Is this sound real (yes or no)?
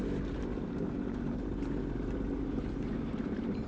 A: no